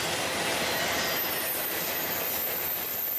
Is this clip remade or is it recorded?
recorded